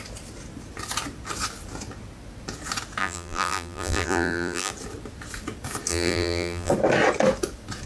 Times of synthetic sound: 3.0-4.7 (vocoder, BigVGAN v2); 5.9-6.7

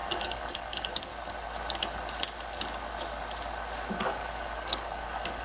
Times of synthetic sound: 0.0-1.1 (codec, DAC); 3.9-5.4

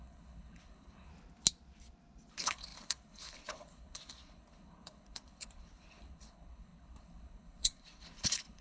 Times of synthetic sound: 0.0-1.1 (codec, HILCodec); 2.3-8.6

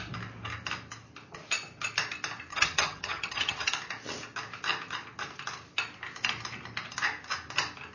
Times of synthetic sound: 2.5-3.7 (vocoder, HiFi-GAN)

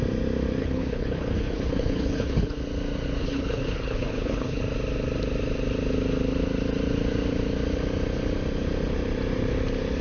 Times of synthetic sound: 0.6-2.6 (codec, HILCodec); 3.2-4.6

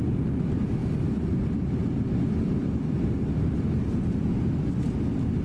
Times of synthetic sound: 2.6-3.9 (vocoder, BigVGAN v2)

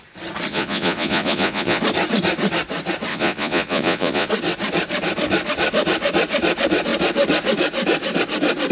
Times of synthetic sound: 0.5-1.8 (vocoder, Vocos); 3.1-4.3